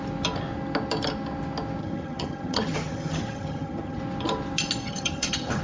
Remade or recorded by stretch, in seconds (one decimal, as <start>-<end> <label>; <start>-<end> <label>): 0.0-1.8 recorded; 1.8-4.0 remade; 4.0-4.8 recorded; 4.8-5.6 remade